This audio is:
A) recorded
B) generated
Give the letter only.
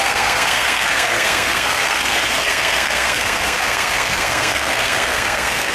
B